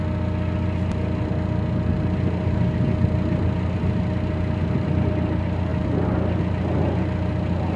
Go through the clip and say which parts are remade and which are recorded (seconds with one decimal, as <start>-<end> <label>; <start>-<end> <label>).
0.0-7.8 recorded